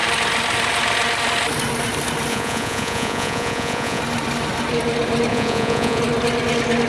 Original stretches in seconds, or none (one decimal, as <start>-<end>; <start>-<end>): 0.0-2.3; 4.0-5.3; 6.0-6.9

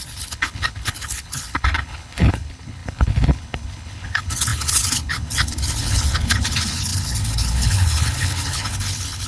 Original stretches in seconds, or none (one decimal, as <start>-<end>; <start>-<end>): none

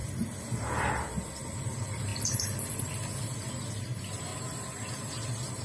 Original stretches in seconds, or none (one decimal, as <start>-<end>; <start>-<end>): 4.3-4.9

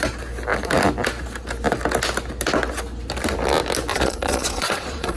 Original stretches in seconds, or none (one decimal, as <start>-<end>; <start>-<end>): 0.0-3.9

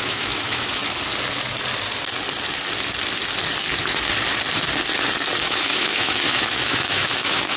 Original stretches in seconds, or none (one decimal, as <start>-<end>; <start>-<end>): 0.8-5.4

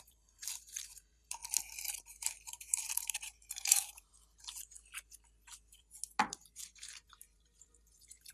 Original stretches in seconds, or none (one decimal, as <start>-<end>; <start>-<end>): 1.4-2.0; 4.1-6.2

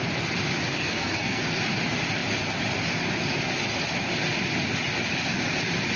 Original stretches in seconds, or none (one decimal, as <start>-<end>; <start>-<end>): 0.0-0.7; 1.4-6.0

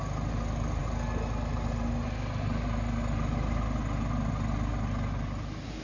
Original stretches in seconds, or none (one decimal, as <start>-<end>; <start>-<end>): 0.0-5.8